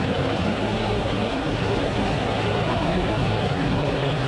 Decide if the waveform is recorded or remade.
remade